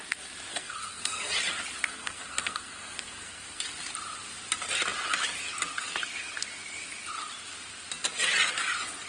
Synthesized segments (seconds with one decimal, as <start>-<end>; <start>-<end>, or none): 0.5-1.3; 1.8-3.6